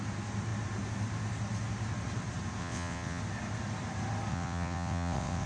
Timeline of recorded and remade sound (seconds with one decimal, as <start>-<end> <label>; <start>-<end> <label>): 0.0-2.6 recorded; 2.6-3.2 remade; 3.2-4.3 recorded; 4.3-5.5 remade